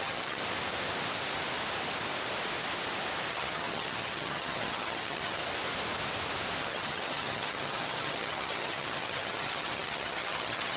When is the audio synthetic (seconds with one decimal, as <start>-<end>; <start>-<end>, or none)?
0.0-0.4; 3.3-5.4; 6.6-10.8